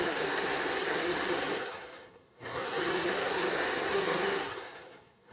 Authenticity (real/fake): fake